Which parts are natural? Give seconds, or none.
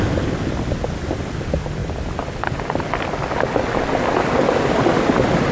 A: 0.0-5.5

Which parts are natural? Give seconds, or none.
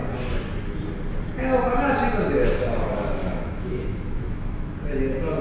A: 0.0-3.2; 4.7-5.4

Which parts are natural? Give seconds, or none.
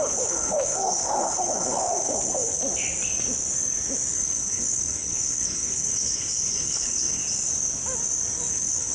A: 2.6-4.1; 7.2-8.5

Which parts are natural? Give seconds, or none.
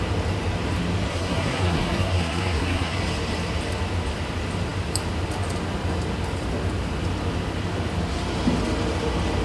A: 0.0-1.1; 3.0-9.4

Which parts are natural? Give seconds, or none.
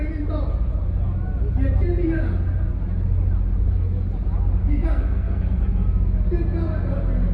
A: 0.0-4.6; 5.6-7.3